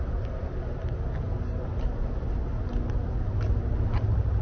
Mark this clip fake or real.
real